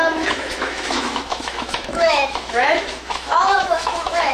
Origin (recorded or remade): remade